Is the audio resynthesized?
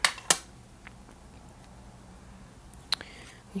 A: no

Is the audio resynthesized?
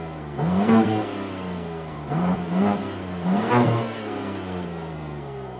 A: yes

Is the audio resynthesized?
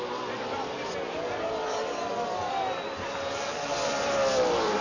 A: no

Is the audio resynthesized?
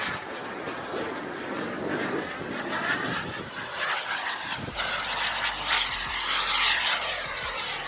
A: no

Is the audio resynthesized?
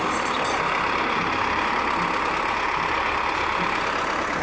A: no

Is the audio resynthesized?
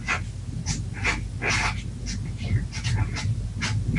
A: no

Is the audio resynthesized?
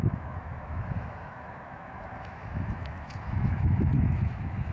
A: yes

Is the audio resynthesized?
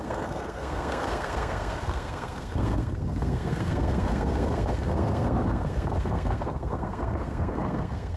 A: yes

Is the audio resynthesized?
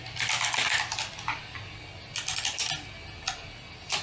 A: no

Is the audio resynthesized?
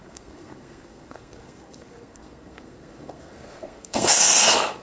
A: yes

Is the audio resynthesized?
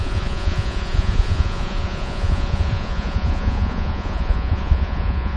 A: yes